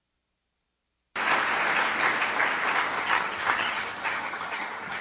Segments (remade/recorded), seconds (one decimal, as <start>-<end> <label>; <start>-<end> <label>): 0.0-3.0 recorded; 3.0-5.0 remade